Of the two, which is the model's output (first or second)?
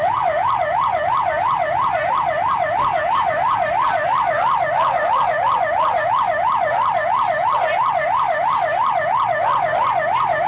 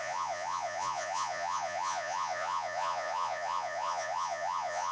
second